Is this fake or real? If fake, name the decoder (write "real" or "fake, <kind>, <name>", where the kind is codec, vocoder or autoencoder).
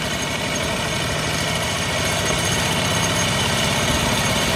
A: fake, vocoder, BigVGAN v2